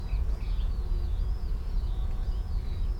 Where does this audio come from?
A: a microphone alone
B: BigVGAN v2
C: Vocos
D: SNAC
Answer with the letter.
C